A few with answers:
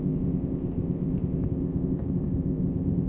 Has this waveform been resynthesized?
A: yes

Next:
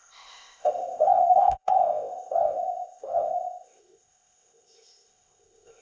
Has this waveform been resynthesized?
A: yes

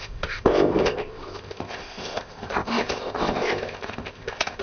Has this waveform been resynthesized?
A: yes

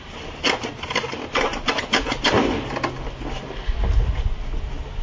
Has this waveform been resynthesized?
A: no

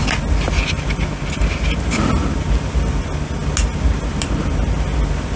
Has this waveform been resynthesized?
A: no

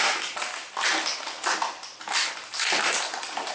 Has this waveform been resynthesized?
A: no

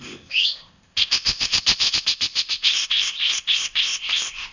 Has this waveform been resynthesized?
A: yes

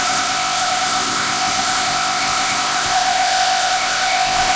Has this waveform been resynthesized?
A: yes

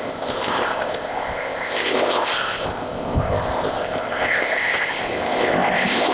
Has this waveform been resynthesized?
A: yes